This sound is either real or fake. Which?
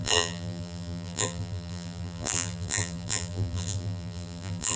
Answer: fake